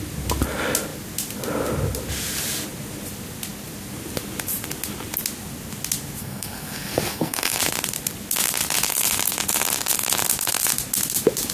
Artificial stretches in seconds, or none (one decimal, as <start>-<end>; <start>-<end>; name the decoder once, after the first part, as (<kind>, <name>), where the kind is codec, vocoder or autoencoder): 6.2-7.6 (codec, SNAC)